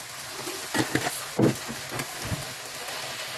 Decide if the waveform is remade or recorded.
recorded